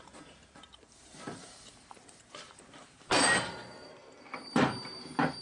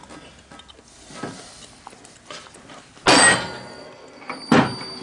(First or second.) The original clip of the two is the second